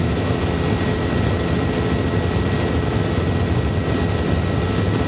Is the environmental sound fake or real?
real